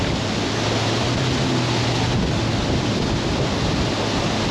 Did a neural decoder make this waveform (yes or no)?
no